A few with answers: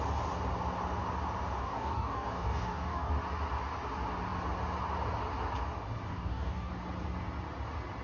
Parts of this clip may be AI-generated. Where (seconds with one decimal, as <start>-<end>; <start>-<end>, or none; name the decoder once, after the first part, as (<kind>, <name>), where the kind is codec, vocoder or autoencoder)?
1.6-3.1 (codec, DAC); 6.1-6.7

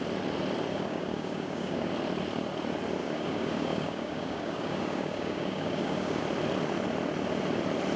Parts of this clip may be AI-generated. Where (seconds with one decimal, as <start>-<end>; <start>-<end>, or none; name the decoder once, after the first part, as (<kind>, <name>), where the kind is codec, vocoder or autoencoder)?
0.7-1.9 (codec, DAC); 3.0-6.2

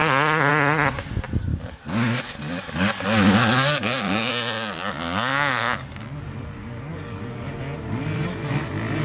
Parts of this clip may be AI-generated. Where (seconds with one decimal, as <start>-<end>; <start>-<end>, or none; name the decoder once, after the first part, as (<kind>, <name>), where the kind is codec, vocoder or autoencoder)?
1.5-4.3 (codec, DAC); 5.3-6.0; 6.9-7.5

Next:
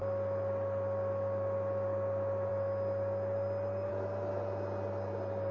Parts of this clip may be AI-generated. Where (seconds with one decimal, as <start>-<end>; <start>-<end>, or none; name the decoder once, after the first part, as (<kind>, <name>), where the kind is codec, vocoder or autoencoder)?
none